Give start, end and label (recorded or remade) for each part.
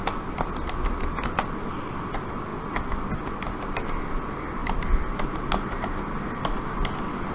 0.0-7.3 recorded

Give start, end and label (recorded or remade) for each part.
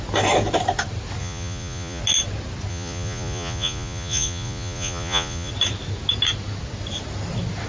0.0-1.2 recorded; 1.2-2.0 remade; 2.0-2.7 recorded; 2.7-5.5 remade; 5.5-7.7 recorded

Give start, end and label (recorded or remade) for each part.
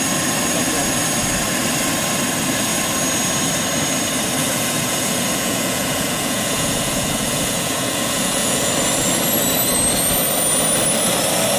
0.0-4.4 recorded; 4.4-8.7 remade; 8.7-11.6 recorded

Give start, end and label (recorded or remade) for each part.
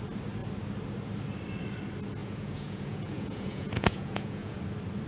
0.0-2.2 recorded; 2.2-4.6 remade; 4.6-5.1 recorded